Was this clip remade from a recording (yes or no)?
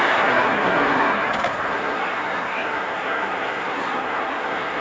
yes